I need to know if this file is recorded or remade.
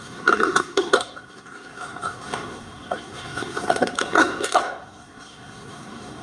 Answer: remade